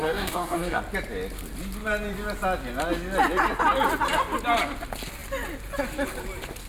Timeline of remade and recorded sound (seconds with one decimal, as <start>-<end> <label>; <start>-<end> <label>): 0.0-0.8 remade; 0.8-6.7 recorded